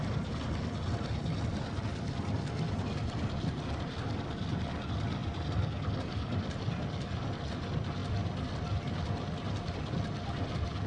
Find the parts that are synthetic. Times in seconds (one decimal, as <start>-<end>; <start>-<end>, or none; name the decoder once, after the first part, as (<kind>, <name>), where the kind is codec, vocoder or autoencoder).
none